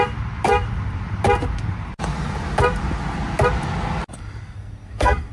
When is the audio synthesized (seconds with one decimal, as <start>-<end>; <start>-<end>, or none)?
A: 4.4-5.3